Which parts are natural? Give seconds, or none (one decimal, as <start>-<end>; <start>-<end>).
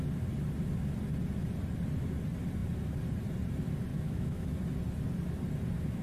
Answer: 0.0-3.9; 4.5-6.0